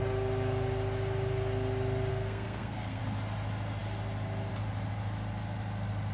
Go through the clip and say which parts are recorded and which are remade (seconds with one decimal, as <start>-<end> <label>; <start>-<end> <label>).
0.0-2.1 recorded; 2.1-3.0 remade; 3.0-6.1 recorded